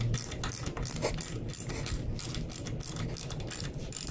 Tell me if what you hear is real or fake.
real